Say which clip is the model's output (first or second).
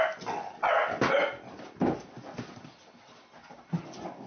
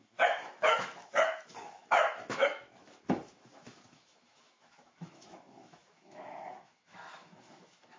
second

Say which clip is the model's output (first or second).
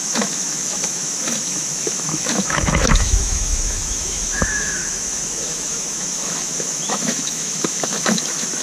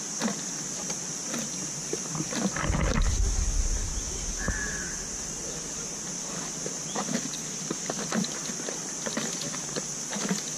first